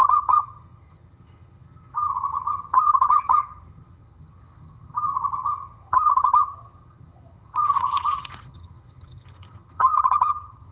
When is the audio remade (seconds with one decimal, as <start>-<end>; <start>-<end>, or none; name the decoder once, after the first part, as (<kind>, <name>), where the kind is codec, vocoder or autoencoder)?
0.0-10.7 (vocoder, HiFi-GAN)